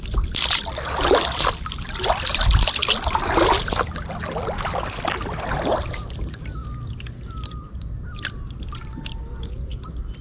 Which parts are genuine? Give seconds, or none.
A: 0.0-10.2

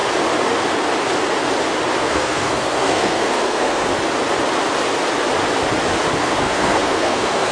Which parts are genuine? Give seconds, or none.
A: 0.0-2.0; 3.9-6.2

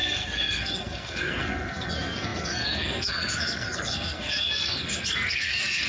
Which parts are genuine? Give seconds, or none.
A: none

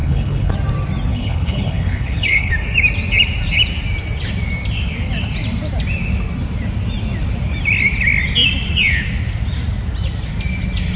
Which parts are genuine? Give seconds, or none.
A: 0.5-1.1; 2.5-11.0

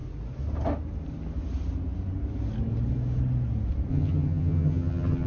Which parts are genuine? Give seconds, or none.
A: 0.0-3.9